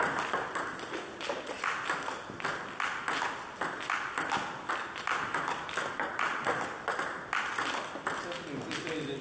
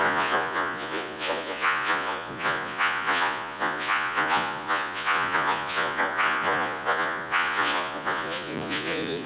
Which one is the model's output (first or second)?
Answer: second